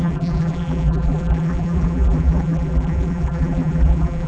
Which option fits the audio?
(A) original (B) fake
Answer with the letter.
B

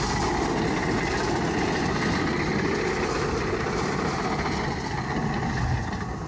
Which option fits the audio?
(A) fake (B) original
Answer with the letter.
B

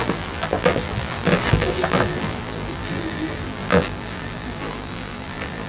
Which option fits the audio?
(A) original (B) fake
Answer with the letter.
B